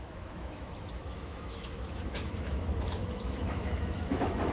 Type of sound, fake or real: fake